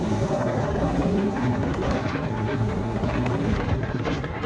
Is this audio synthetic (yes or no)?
yes